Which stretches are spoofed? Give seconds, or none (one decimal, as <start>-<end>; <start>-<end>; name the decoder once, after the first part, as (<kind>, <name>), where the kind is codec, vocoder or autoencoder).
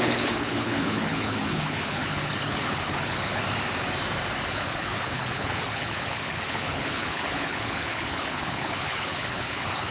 0.0-3.4 (codec, HILCodec); 4.5-9.9